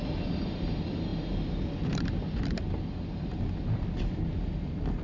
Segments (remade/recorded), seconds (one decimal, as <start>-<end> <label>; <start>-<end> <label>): 0.0-5.0 recorded